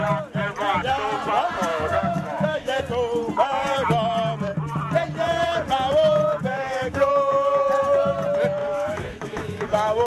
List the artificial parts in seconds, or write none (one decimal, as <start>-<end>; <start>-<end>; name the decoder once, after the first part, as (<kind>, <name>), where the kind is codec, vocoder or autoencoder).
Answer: 1.7-2.8 (autoencoder, DAC-VAE); 6.5-7.1; 8.6-10.1